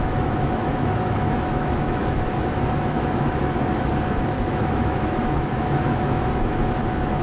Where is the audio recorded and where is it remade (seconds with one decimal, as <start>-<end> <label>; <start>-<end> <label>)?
0.0-7.2 remade